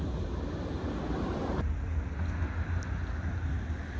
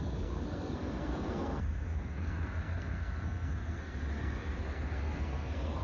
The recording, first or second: first